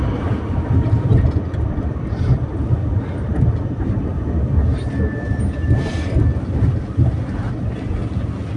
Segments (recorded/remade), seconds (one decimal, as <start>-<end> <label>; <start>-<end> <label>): 0.0-4.7 remade; 4.7-5.7 recorded; 5.7-8.0 remade; 8.0-8.6 recorded

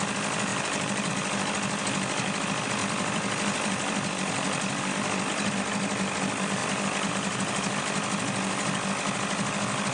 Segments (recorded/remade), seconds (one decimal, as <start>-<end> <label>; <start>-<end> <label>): 0.0-0.5 recorded; 0.5-1.1 remade; 1.1-2.8 recorded; 2.8-5.5 remade; 5.5-6.6 recorded; 6.6-7.1 remade; 7.1-9.9 recorded

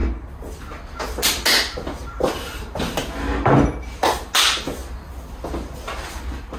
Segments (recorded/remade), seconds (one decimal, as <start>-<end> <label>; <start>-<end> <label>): 0.0-2.0 recorded; 2.0-2.9 remade; 2.9-6.6 recorded

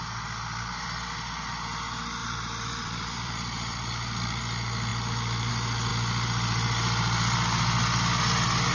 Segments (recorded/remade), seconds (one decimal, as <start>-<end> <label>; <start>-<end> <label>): 0.0-2.2 recorded; 2.2-4.4 remade; 4.4-4.9 recorded; 4.9-5.5 remade; 5.5-8.7 recorded

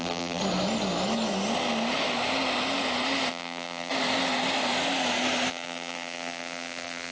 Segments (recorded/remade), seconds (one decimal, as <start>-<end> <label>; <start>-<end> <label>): 0.0-0.4 remade; 0.4-3.3 recorded; 3.3-3.9 remade; 3.9-5.5 recorded; 5.5-7.1 remade